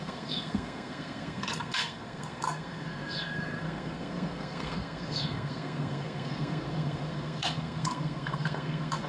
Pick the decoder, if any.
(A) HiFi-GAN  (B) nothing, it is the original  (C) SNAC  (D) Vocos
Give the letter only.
C